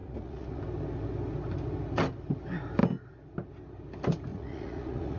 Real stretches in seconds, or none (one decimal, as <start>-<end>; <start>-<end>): 0.6-4.3